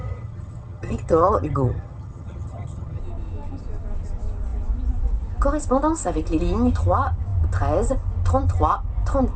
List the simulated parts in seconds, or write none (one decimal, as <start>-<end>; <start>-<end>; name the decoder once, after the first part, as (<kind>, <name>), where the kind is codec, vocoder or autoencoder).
0.0-3.0 (vocoder, HiFi-GAN)